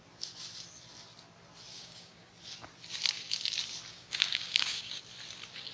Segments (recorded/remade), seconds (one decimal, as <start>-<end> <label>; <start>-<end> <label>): 0.0-1.7 recorded; 1.7-2.3 remade; 2.3-3.9 recorded; 3.9-5.0 remade; 5.0-5.7 recorded